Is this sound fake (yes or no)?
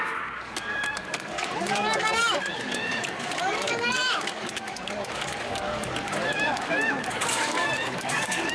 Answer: yes